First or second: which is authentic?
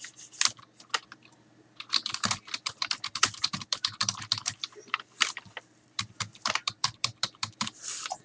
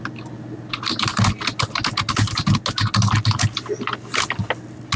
second